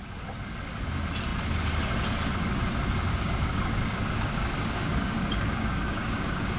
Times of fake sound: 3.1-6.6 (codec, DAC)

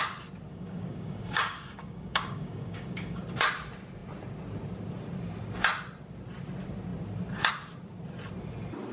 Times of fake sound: 0.5-3.2 (codec, DAC)

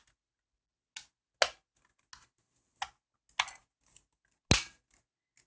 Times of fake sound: none

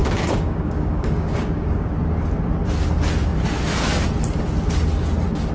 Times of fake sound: 0.0-1.9 (codec, DAC)

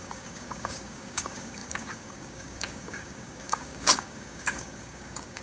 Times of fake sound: 0.0-5.4 (codec, DAC)

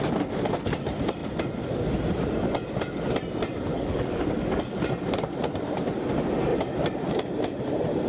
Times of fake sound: 3.7-4.6 (codec, DAC)

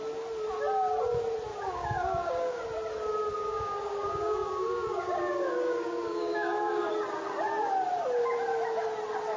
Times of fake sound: 1.5-2.6 (codec, DAC); 3.4-6.9